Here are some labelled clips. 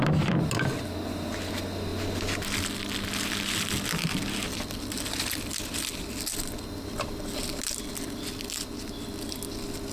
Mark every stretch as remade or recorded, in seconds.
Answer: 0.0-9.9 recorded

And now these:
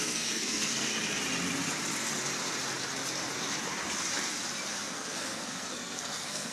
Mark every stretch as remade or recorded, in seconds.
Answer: 0.0-0.9 remade; 0.9-4.7 recorded; 4.7-6.5 remade

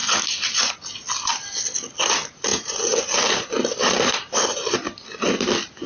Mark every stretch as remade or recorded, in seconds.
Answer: 0.0-2.5 recorded; 2.5-4.7 remade; 4.7-5.9 recorded